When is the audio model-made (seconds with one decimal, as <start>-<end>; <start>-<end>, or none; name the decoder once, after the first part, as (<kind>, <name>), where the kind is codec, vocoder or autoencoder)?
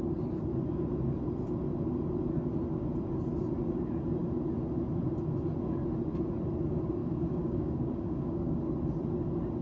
7.0-8.6 (codec, DAC)